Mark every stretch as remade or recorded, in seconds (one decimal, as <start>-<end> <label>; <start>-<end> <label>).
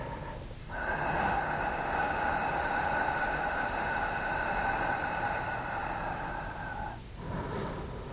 0.0-0.6 recorded; 0.6-4.5 remade; 4.5-8.1 recorded